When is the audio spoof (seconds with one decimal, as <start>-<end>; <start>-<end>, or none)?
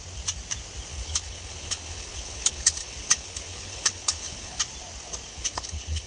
0.9-4.6; 5.3-6.1